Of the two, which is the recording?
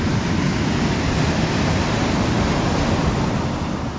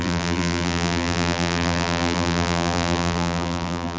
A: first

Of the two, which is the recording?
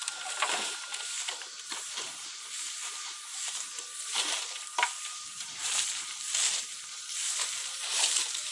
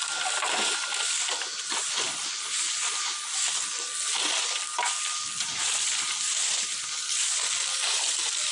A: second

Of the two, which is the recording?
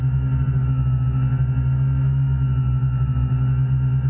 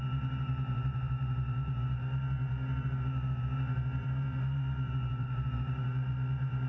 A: first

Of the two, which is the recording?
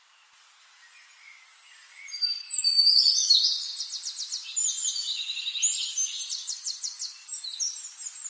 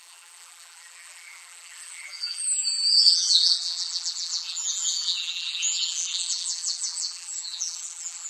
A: first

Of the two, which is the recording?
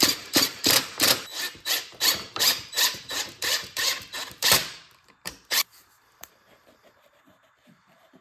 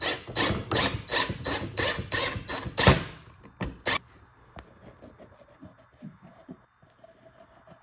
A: second